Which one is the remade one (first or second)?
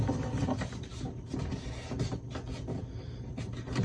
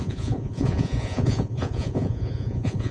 second